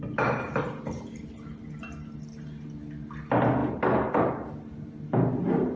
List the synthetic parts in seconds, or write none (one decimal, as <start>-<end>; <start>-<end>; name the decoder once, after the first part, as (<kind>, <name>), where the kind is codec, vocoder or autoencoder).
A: none